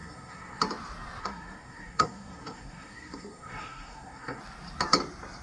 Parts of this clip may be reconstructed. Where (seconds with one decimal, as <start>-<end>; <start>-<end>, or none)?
0.0-0.6; 1.2-4.4